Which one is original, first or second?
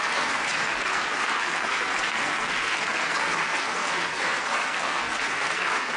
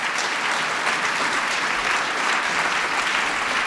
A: second